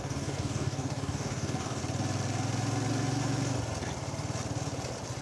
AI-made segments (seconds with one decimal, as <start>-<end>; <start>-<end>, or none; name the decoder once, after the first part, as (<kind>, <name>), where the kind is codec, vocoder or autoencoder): 0.0-1.8 (codec, DAC)